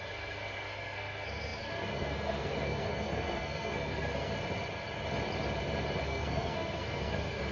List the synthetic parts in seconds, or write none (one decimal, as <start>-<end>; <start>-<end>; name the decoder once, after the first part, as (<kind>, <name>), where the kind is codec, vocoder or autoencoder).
0.0-4.3 (codec, SNAC); 6.0-7.5